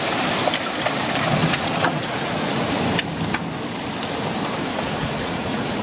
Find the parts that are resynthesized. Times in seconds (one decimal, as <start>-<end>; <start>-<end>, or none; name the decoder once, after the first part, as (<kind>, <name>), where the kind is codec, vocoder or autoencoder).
1.4-2.3 (vocoder, Vocos); 5.0-5.8